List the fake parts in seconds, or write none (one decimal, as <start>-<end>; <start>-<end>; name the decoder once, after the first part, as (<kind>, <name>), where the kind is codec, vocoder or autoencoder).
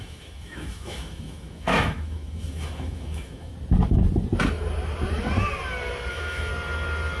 0.0-3.5 (autoencoder, DAC-VAE); 6.1-6.5